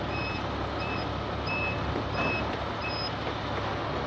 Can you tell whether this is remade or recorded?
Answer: remade